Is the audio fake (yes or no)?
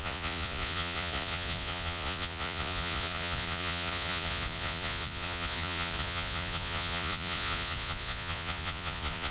yes